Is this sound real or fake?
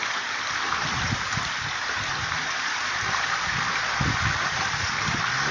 real